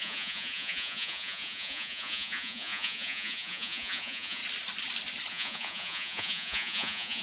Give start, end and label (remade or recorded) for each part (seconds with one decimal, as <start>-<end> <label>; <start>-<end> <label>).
0.0-4.4 remade; 4.4-5.3 recorded; 5.3-7.2 remade